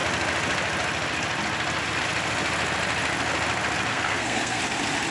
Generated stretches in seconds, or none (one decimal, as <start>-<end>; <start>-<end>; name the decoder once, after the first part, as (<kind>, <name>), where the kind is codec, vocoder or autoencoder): 3.9-4.6 (codec, SNAC)